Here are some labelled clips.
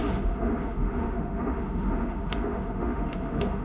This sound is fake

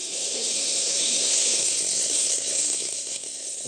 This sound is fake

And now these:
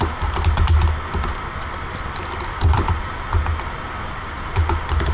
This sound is real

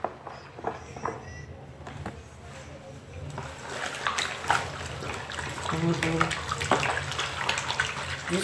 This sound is real